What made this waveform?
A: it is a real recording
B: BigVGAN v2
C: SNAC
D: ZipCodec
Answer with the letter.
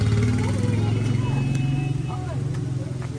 A